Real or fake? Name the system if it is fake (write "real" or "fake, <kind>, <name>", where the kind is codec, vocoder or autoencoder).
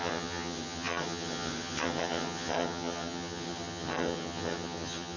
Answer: fake, vocoder, HiFi-GAN